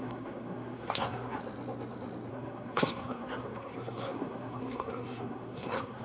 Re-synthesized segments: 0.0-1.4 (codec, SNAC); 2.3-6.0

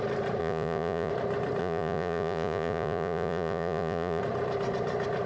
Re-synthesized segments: 0.4-1.1 (vocoder, Vocos); 1.6-4.2

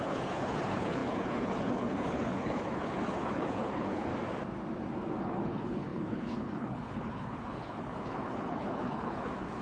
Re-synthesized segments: 0.0-4.1 (codec, HILCodec); 5.2-9.6

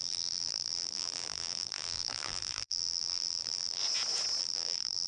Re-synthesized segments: 0.0-3.8 (vocoder, BigVGAN v2); 4.4-5.1

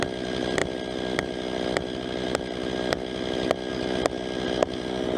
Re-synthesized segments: none

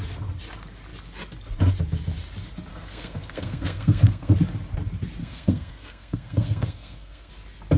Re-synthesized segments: 2.7-4.3 (codec, SNAC); 5.2-7.3

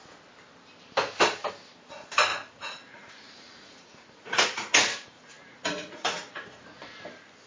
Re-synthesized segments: 2.3-6.8 (vocoder, Vocos)

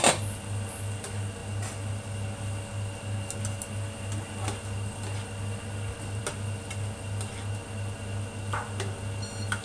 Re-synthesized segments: none